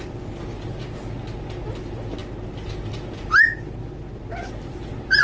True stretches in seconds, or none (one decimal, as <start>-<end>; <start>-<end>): 0.0-5.2